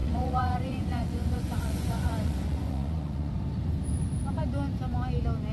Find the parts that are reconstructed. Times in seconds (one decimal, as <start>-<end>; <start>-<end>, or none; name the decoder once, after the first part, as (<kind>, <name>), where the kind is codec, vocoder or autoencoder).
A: 0.0-3.3 (vocoder, Vocos)